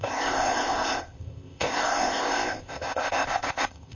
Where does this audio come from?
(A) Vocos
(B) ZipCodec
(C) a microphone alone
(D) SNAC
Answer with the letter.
B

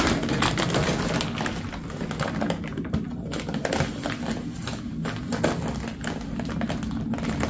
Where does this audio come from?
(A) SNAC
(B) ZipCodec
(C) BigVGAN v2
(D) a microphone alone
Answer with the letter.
D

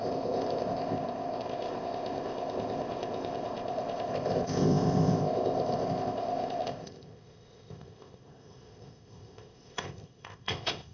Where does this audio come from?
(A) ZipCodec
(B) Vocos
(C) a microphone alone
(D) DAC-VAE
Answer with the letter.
A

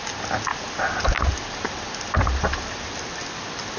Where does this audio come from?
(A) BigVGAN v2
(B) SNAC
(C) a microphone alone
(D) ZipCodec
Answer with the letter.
C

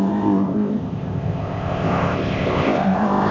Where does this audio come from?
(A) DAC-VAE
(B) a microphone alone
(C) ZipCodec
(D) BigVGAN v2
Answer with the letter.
C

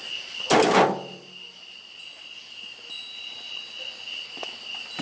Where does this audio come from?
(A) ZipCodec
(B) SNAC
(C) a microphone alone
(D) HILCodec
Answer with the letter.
C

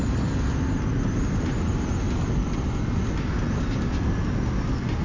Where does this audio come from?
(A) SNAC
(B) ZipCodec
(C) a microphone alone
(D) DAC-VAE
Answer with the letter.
C